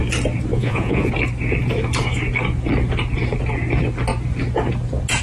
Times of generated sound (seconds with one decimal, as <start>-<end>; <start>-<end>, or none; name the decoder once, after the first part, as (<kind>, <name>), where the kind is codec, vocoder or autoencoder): 0.5-1.1 (vocoder, Vocos)